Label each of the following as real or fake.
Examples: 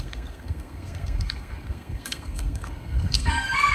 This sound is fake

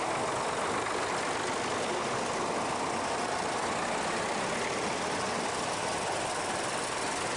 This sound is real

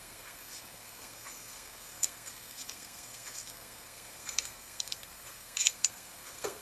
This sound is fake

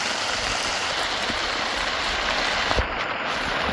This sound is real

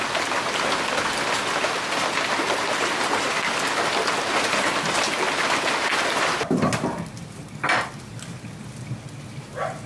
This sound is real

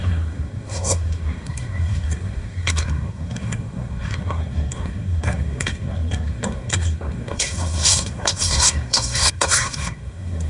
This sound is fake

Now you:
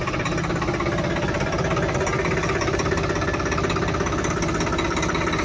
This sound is real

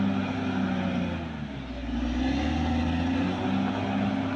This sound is real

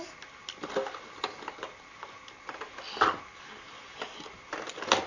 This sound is real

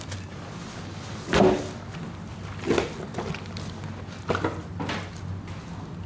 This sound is real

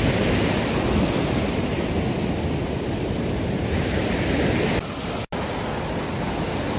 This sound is real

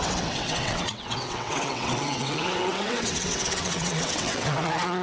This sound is fake